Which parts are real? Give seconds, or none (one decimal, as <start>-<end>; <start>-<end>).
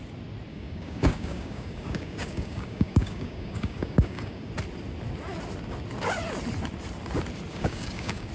0.0-0.5; 4.5-7.5